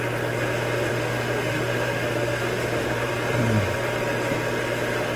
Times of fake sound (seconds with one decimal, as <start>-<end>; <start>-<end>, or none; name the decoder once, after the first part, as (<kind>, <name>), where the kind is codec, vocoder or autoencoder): 0.9-3.1 (autoencoder, DAC-VAE)